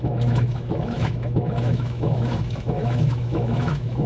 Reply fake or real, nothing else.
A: fake